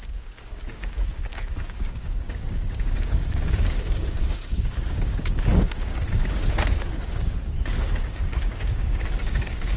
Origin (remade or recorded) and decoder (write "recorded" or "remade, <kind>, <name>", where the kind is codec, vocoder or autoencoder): remade, codec, DAC